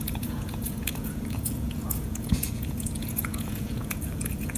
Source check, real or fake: fake